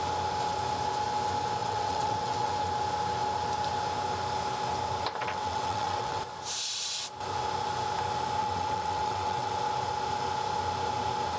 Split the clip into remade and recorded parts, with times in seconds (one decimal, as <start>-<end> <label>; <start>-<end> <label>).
0.0-1.6 recorded; 1.6-2.5 remade; 2.5-5.2 recorded; 5.2-6.2 remade; 6.2-8.4 recorded; 8.4-9.5 remade; 9.5-11.4 recorded